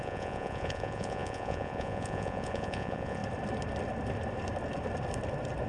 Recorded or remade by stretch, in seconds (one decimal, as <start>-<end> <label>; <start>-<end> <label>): 0.0-3.2 remade; 3.2-5.7 recorded